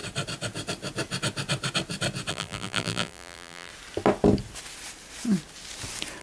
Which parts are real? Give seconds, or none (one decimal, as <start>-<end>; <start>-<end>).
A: 0.0-2.3; 3.7-6.2